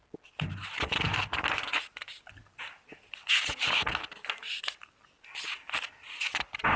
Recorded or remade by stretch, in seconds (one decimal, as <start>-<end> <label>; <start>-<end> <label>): 0.0-6.8 recorded